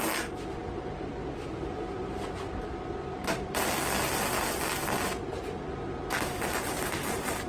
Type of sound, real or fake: real